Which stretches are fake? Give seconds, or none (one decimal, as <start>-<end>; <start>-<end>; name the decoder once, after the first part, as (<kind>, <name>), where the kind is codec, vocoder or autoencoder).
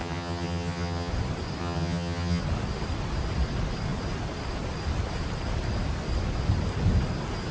0.0-1.1 (vocoder, HiFi-GAN); 1.6-2.4